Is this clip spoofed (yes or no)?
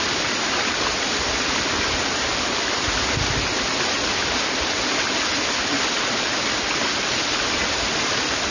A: no